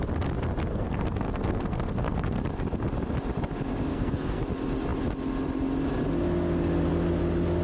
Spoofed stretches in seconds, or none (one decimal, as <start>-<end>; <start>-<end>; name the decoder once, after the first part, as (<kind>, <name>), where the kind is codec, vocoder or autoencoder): 0.7-2.4 (codec, SNAC); 3.9-4.4